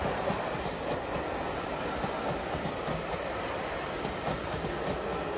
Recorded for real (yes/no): yes